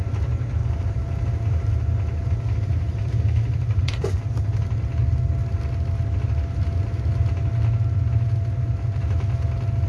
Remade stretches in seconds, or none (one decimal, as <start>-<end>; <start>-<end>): 0.6-4.2